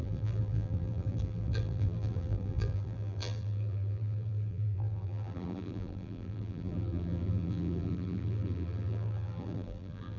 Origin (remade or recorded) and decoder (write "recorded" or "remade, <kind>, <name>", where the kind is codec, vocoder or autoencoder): remade, vocoder, BigVGAN v2